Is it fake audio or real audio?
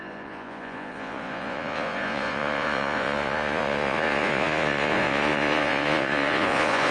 fake